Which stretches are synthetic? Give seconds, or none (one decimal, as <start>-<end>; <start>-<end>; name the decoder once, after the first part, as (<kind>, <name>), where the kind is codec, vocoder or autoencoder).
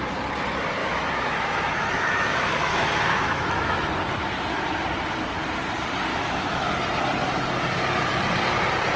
0.8-3.9 (autoencoder, DAC-VAE); 6.1-6.7